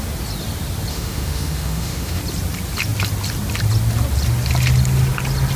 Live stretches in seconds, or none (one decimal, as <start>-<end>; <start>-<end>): 0.0-0.9; 2.2-5.6